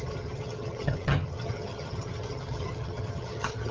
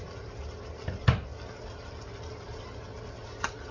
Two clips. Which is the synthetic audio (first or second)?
first